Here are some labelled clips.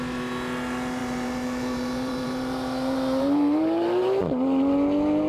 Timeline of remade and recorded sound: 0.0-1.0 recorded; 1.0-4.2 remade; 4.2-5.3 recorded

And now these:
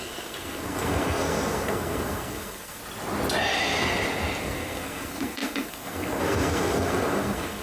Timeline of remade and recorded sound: 0.0-2.8 remade; 2.8-4.4 recorded; 4.4-7.6 remade